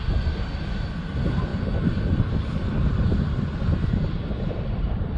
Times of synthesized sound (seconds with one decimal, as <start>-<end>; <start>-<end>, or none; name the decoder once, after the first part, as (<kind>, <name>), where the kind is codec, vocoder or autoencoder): 0.0-1.5 (vocoder, BigVGAN v2); 3.3-5.2